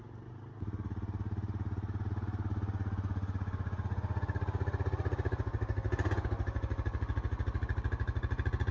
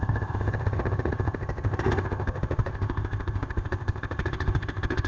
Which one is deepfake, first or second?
second